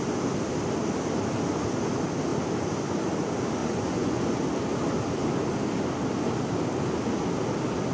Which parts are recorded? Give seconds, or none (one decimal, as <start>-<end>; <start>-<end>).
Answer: 0.0-3.6; 4.2-7.9